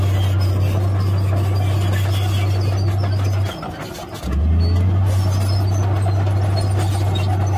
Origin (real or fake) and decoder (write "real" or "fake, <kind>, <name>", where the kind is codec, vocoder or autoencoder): real